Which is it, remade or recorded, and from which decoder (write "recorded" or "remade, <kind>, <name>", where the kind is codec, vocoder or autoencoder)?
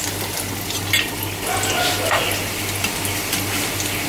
recorded